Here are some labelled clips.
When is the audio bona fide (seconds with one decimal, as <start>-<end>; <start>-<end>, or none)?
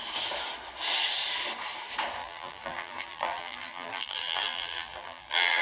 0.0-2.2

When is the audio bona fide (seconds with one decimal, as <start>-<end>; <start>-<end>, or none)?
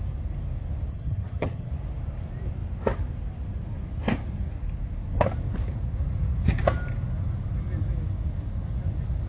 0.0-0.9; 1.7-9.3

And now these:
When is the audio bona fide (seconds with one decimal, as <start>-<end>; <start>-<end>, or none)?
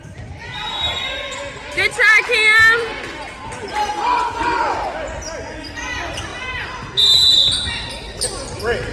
0.0-8.9